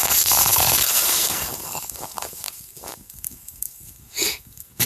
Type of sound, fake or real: fake